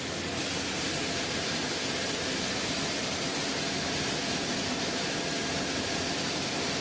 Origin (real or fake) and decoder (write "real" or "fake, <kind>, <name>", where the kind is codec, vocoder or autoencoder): real